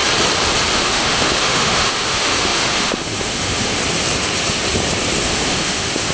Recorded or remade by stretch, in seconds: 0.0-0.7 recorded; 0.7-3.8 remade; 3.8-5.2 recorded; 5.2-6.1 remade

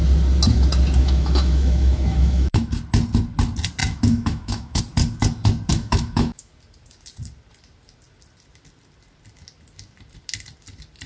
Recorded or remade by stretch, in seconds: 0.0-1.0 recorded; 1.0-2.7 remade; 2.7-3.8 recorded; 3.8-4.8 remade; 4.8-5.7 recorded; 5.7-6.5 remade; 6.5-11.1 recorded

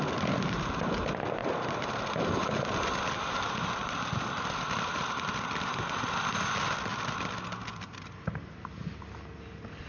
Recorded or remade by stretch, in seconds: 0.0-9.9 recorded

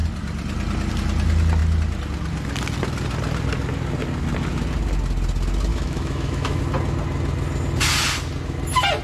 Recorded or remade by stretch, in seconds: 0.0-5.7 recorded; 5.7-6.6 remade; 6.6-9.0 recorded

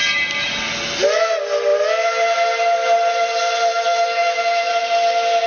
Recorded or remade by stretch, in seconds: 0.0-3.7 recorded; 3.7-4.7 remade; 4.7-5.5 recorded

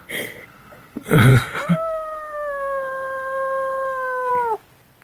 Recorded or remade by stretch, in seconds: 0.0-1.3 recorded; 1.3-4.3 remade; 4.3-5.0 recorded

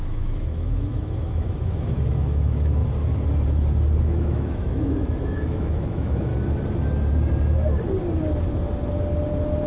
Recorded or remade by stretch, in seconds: 0.0-2.8 remade; 2.8-4.0 recorded; 4.0-6.3 remade; 6.3-9.7 recorded